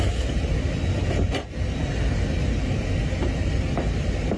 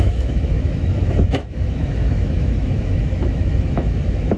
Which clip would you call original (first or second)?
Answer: first